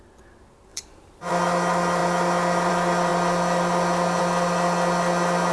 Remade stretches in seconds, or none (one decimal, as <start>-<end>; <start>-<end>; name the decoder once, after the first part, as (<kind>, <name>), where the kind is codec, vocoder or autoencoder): 0.7-1.3 (vocoder, BigVGAN v2)

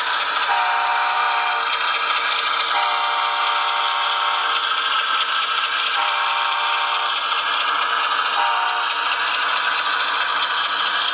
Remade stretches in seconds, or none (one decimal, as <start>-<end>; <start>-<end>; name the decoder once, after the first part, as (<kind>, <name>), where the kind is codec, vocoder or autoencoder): 0.9-1.5 (vocoder, BigVGAN v2); 6.0-6.6

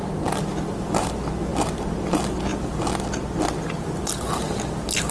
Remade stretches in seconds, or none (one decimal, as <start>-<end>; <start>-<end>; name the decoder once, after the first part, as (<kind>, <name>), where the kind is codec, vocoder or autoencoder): none

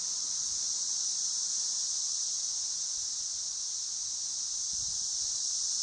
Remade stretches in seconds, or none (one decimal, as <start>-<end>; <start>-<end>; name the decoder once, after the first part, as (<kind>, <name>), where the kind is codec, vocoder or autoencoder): 0.0-1.1 (vocoder, BigVGAN v2); 4.6-5.8

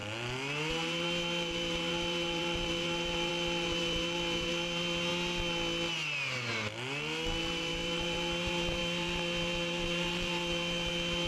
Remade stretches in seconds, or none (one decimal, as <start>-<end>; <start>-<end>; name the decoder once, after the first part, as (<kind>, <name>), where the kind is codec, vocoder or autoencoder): 0.7-5.1 (vocoder, BigVGAN v2); 7.4-11.3

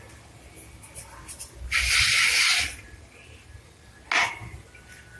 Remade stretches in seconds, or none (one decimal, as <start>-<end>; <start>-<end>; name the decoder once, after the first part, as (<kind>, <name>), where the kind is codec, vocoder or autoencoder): 2.5-3.4 (vocoder, BigVGAN v2)

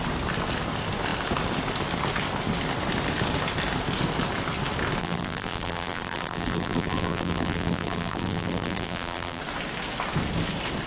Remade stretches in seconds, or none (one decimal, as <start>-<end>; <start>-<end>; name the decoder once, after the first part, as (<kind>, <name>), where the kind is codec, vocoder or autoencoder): 5.0-9.4 (vocoder, BigVGAN v2)